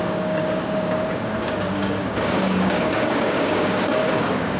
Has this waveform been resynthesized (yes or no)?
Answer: yes